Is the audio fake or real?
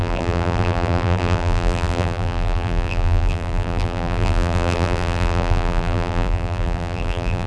fake